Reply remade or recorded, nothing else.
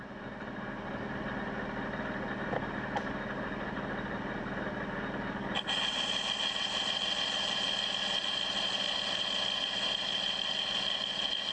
recorded